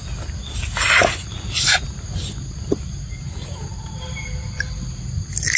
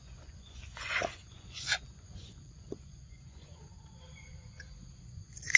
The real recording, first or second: first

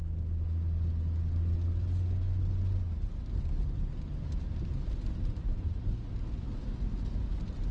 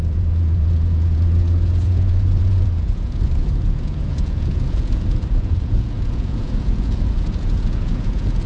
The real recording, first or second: first